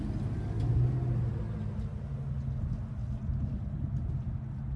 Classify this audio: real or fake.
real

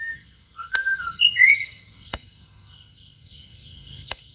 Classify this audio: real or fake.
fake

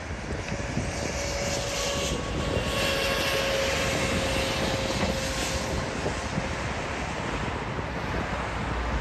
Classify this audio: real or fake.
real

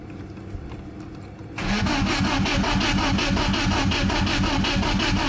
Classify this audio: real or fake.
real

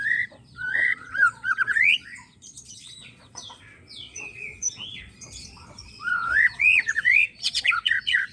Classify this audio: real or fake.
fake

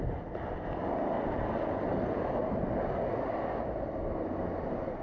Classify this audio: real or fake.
real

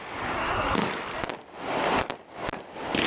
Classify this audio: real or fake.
real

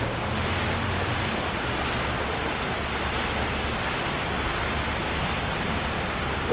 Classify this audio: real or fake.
real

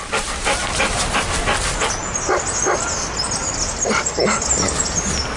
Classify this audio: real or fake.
real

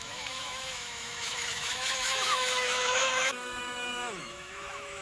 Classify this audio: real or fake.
fake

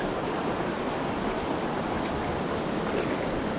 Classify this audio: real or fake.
real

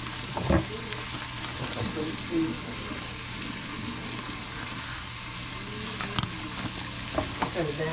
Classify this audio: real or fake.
real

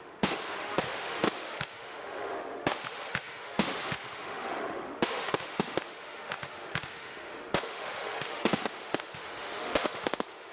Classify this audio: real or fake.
fake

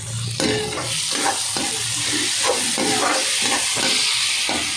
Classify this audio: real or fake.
real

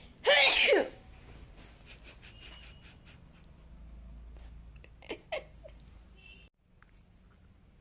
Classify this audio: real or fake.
real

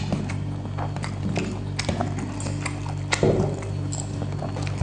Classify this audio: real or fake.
real